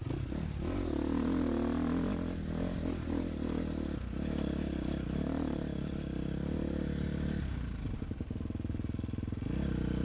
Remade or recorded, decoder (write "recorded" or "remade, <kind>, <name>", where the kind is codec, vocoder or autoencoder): recorded